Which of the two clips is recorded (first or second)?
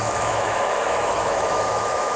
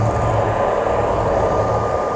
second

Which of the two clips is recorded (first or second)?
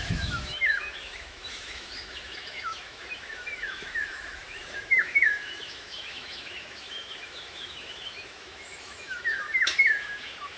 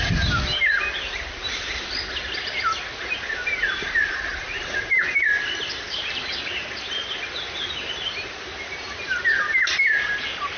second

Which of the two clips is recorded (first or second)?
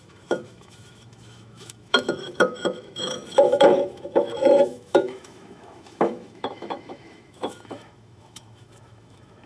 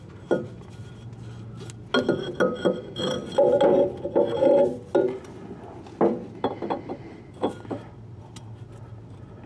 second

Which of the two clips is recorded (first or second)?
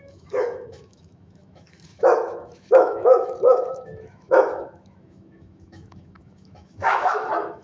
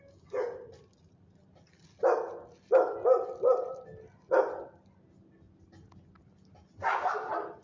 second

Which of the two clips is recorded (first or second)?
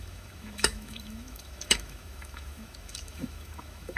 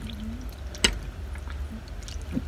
second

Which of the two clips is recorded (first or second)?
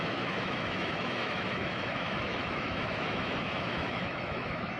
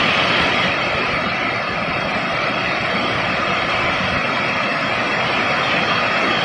second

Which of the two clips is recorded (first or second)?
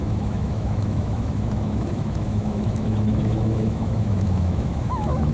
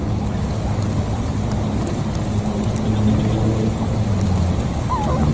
second